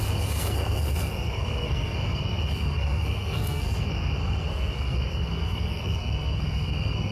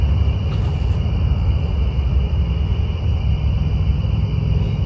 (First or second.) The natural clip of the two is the second